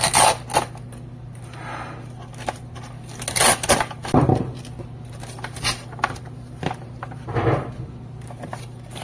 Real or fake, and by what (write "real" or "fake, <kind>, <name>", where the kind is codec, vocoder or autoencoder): real